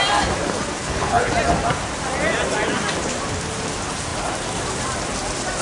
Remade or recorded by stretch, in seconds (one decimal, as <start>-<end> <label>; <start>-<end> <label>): 0.0-0.8 recorded; 0.8-1.3 remade; 1.3-5.6 recorded